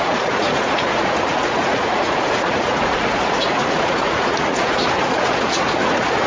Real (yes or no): no